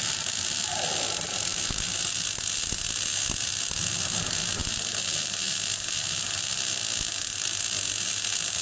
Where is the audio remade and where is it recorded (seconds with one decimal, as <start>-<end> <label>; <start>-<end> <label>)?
0.0-8.6 recorded